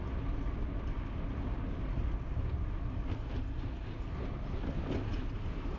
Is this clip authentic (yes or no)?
yes